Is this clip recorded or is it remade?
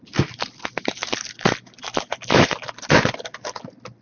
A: recorded